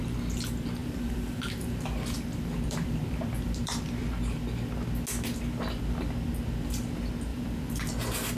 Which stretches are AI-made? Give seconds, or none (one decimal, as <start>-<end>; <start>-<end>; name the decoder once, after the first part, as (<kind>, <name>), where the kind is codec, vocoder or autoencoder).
0.8-4.1 (vocoder, BigVGAN v2); 7.3-8.0